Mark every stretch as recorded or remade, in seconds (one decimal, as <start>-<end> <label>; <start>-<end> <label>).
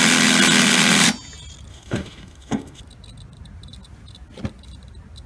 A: 0.0-1.7 recorded; 1.7-2.8 remade; 2.8-5.3 recorded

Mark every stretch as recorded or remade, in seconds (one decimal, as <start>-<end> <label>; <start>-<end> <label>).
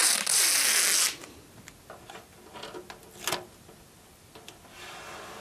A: 0.0-5.4 recorded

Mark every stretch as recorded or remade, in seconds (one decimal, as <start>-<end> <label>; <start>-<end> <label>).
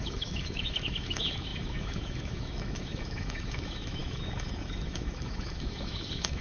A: 0.0-6.4 remade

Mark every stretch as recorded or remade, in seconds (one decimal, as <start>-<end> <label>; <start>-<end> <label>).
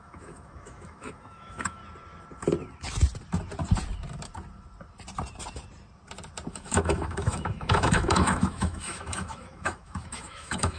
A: 0.0-1.8 remade; 1.8-6.5 recorded; 6.5-10.8 remade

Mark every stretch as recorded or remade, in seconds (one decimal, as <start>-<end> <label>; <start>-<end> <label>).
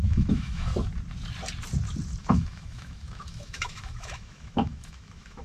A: 0.0-0.7 remade; 0.7-2.2 recorded; 2.2-5.4 remade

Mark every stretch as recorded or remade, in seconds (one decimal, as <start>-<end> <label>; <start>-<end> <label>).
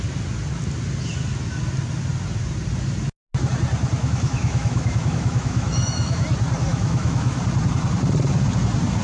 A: 0.0-4.0 recorded; 4.0-6.2 remade; 6.2-6.7 recorded; 6.7-7.4 remade; 7.4-9.0 recorded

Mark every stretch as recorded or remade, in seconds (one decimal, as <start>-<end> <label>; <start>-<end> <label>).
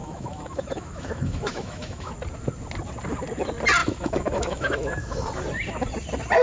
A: 0.0-2.1 remade; 2.1-3.8 recorded; 3.8-5.2 remade; 5.2-6.4 recorded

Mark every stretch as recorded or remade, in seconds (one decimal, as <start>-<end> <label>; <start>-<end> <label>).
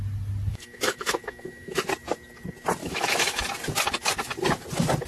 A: 0.0-0.5 recorded; 0.5-1.8 remade; 1.8-2.8 recorded; 2.8-3.4 remade; 3.4-5.1 recorded